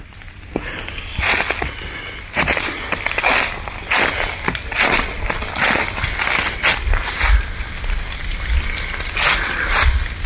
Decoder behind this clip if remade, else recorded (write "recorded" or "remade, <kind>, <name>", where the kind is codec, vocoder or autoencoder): recorded